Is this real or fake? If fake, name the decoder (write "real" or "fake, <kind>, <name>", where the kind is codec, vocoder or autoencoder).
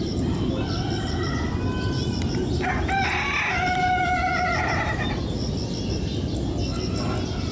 real